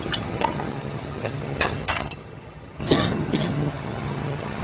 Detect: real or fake fake